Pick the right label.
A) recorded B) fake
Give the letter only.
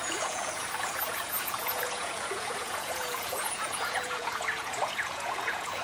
B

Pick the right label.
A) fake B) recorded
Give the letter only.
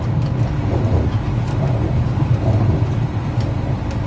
B